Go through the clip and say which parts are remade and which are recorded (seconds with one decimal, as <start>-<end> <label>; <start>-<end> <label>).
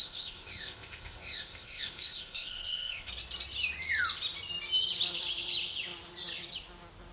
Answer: 0.0-3.1 remade; 3.1-7.1 recorded